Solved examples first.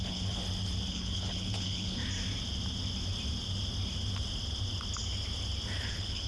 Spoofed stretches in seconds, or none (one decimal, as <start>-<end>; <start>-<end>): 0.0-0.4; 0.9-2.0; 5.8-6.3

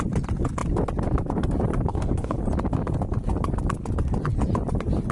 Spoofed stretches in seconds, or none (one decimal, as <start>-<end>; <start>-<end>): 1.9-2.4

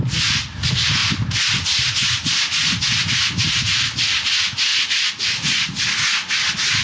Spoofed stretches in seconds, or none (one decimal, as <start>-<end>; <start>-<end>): none

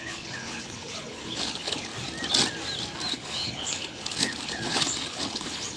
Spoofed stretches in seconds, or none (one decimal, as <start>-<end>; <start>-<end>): 0.0-1.9; 3.1-5.8

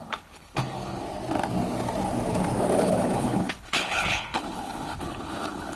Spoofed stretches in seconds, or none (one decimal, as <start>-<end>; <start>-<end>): 0.0-1.0; 2.8-5.7

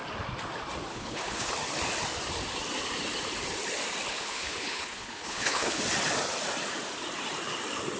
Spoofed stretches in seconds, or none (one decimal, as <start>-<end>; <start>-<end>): 0.9-1.5; 4.1-5.8